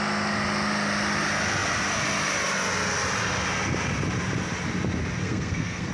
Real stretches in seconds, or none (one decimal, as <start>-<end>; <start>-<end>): 0.0-5.2